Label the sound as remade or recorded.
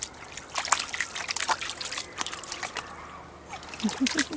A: recorded